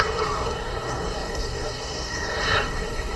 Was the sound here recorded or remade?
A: remade